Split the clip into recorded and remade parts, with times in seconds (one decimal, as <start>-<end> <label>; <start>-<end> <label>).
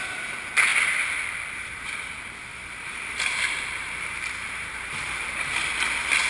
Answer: 0.0-2.5 recorded; 2.5-5.7 remade; 5.7-6.3 recorded